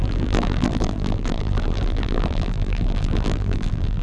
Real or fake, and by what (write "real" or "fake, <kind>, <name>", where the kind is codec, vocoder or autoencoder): fake, vocoder, BigVGAN v2